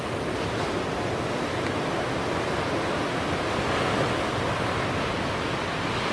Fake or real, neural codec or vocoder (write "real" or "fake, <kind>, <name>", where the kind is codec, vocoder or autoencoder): real